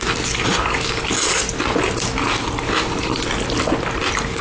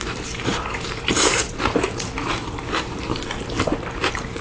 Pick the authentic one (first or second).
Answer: first